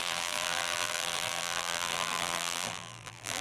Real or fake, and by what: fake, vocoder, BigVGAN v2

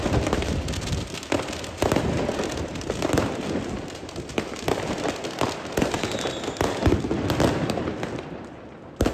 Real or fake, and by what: fake, vocoder, BigVGAN v2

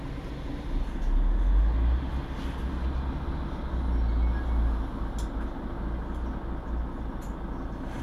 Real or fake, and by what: real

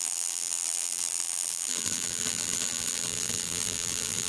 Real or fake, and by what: fake, vocoder, BigVGAN v2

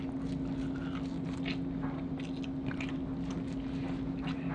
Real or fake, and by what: real